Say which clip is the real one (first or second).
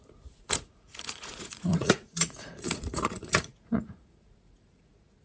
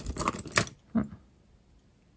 second